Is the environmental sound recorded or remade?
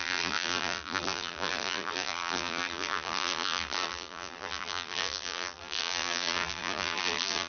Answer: remade